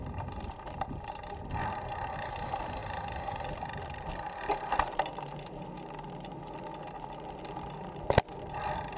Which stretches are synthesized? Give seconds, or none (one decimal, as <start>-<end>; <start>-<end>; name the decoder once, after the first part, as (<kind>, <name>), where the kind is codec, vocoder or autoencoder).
none